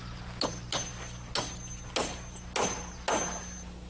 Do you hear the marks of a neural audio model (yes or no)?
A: no